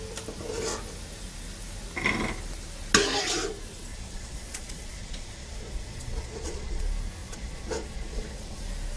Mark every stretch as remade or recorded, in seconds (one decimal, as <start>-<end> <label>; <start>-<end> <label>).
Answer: 0.0-3.9 recorded; 3.9-6.8 remade; 6.8-7.2 recorded; 7.2-8.6 remade; 8.6-9.0 recorded